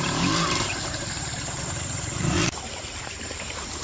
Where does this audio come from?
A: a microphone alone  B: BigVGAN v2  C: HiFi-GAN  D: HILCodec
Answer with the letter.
B